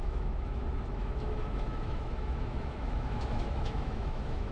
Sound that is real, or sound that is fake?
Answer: fake